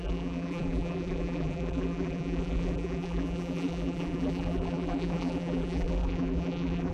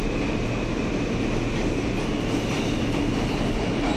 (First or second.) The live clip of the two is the second